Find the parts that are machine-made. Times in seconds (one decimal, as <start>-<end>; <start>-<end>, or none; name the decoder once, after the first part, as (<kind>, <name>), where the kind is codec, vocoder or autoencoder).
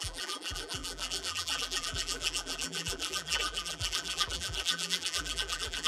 0.0-5.9 (vocoder, BigVGAN v2)